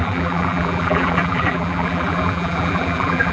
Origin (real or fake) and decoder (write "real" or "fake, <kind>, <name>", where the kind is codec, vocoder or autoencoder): fake, vocoder, BigVGAN v2